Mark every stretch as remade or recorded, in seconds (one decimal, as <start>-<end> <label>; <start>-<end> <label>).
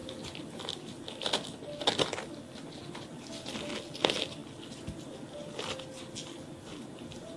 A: 0.0-7.4 recorded